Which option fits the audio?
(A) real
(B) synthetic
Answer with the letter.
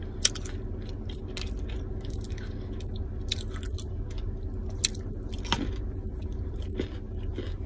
A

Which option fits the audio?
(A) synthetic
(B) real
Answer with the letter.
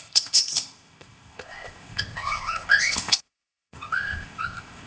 A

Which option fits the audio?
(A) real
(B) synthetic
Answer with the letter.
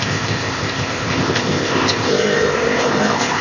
B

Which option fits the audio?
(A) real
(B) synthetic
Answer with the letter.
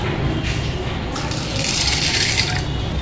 A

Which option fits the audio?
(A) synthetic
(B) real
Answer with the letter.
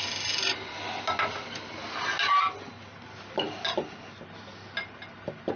B